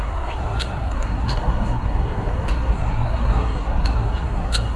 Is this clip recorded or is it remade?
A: remade